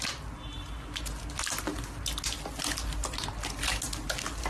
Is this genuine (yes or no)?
yes